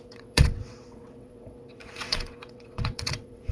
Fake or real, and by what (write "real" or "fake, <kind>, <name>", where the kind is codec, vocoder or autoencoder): fake, vocoder, WaveNeXt